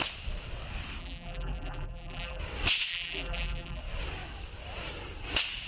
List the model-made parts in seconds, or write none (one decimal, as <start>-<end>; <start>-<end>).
1.0-2.4; 2.9-3.8